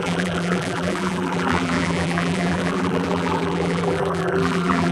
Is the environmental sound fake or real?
fake